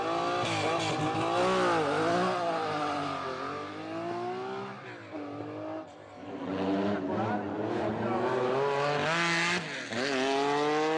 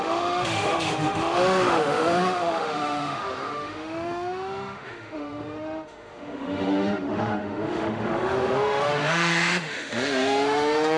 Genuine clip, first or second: first